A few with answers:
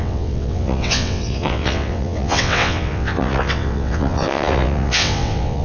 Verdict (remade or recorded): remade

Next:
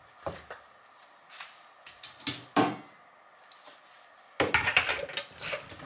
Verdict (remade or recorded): recorded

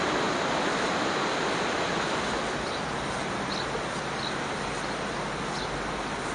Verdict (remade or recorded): recorded